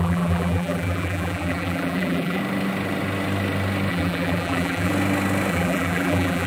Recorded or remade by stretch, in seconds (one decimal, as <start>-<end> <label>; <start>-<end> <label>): 0.0-2.4 remade; 2.4-3.9 recorded; 3.9-4.9 remade; 4.9-5.5 recorded; 5.5-6.5 remade